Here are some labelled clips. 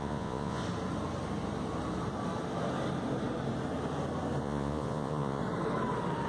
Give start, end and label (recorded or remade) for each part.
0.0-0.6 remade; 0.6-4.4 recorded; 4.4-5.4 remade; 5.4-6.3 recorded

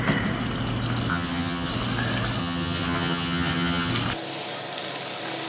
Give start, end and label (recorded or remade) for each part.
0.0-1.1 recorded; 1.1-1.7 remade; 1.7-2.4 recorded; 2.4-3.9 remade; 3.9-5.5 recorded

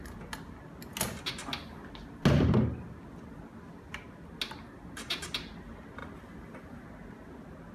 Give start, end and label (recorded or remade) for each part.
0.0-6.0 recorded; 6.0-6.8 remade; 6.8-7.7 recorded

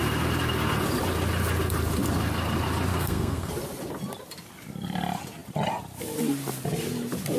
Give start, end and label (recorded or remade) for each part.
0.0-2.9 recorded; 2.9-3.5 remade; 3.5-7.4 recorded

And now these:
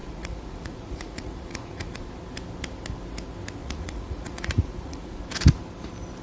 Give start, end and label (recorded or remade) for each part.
0.0-2.0 remade; 2.0-3.6 recorded; 3.6-5.2 remade; 5.2-6.2 recorded

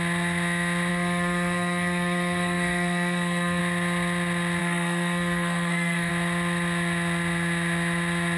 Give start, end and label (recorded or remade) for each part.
0.0-0.9 recorded; 0.9-3.6 remade; 3.6-4.6 recorded; 4.6-6.1 remade; 6.1-8.4 recorded

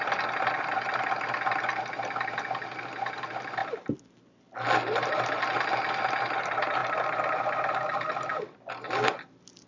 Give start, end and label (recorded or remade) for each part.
0.0-9.7 recorded

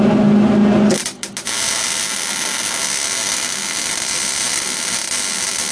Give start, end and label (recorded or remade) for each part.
0.0-5.7 recorded